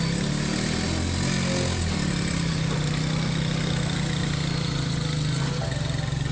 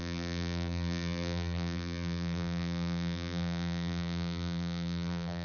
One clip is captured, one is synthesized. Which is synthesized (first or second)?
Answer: second